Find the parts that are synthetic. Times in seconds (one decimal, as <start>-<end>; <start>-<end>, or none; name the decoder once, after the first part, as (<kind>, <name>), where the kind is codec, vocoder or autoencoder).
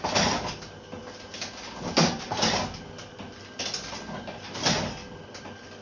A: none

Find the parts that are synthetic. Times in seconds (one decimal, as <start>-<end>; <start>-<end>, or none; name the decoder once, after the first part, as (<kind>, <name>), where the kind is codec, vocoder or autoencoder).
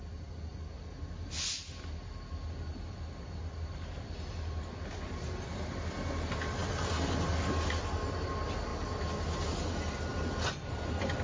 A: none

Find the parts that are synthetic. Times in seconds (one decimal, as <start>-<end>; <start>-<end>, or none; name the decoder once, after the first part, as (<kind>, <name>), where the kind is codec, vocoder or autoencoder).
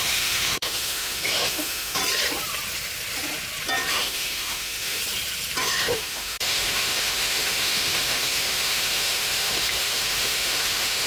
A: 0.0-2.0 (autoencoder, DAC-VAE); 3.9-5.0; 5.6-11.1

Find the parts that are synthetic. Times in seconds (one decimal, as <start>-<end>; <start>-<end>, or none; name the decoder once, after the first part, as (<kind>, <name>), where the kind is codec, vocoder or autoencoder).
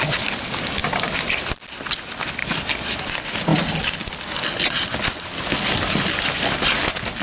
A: none